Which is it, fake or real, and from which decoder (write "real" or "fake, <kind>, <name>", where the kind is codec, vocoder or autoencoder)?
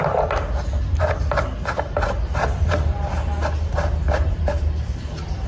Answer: real